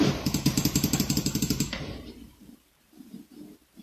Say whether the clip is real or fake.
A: fake